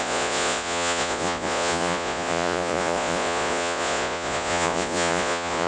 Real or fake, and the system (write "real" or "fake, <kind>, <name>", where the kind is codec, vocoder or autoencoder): fake, vocoder, Vocos